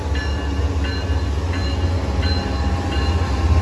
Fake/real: real